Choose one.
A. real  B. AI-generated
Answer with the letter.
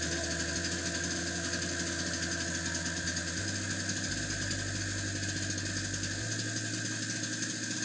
A